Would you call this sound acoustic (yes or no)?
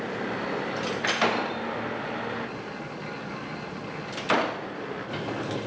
yes